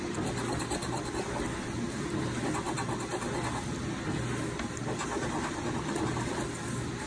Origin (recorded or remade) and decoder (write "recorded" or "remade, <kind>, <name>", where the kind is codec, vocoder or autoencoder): recorded